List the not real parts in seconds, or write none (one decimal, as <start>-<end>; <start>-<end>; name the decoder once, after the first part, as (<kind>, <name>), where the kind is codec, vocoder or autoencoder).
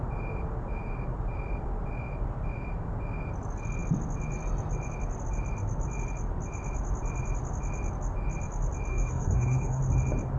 8.9-9.8 (codec, DAC)